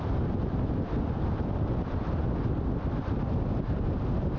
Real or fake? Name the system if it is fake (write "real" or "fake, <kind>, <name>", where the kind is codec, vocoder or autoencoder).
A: real